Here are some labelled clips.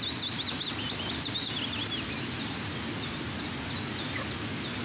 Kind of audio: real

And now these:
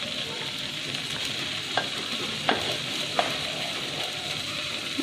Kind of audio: fake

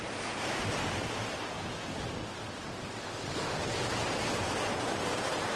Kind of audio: real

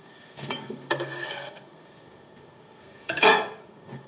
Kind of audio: fake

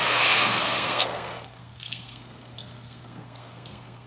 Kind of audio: fake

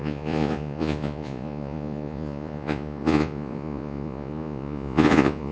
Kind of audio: fake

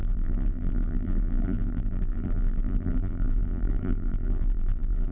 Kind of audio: fake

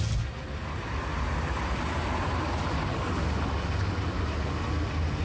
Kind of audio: real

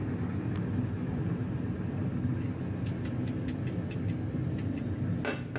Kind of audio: real